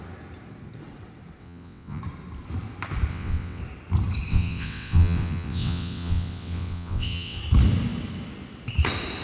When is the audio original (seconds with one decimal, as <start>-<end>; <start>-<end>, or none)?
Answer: 0.0-1.4; 2.0-3.1; 3.6-4.3; 7.4-9.2